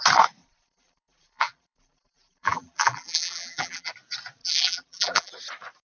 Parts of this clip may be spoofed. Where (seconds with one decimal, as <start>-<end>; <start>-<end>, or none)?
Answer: 0.4-3.9; 4.4-5.3